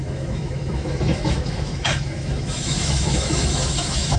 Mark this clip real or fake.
fake